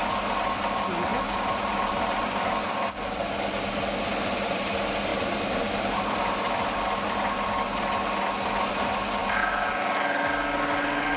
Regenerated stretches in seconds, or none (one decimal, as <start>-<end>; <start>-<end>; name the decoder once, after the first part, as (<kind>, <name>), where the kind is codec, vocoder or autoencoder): 1.1-2.7 (vocoder, BigVGAN v2); 5.1-6.8; 9.2-9.7

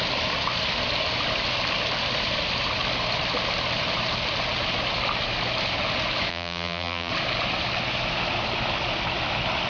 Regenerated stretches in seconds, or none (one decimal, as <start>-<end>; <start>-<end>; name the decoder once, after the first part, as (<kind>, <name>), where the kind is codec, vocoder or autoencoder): 6.3-7.1 (vocoder, BigVGAN v2)